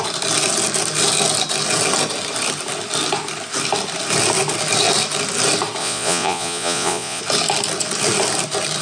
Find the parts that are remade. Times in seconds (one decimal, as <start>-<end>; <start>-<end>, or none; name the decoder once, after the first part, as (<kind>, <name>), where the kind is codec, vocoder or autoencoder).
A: 5.8-7.2 (vocoder, Vocos)